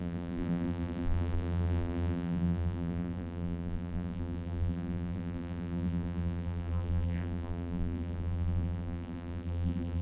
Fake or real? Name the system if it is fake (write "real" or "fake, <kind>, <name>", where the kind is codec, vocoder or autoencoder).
fake, vocoder, BigVGAN v2